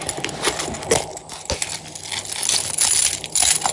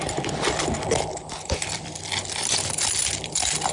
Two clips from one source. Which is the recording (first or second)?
first